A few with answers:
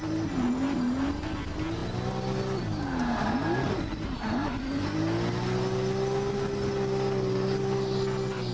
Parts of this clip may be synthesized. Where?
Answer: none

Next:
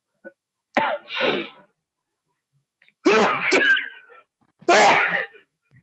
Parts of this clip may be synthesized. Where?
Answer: 0.0-0.8 (autoencoder, DAC-VAE); 2.1-3.4; 4.7-5.8

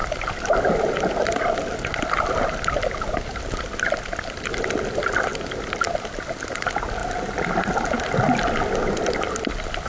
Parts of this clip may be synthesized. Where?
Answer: none

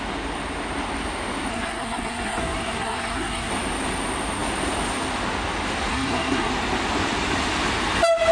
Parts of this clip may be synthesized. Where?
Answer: 1.5-3.5 (codec, SNAC); 5.9-6.5